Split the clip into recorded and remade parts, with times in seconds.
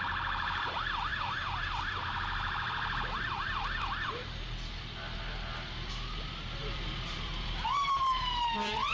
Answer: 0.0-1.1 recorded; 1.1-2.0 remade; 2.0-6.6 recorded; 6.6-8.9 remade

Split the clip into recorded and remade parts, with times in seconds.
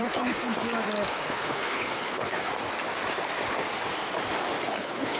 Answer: 0.0-0.5 remade; 0.5-1.1 recorded; 1.1-2.5 remade; 2.5-4.6 recorded; 4.6-5.2 remade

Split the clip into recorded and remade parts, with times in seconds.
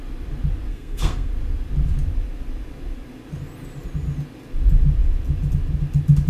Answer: 0.0-0.7 recorded; 0.7-1.3 remade; 1.3-6.3 recorded